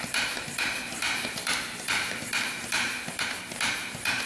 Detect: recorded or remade remade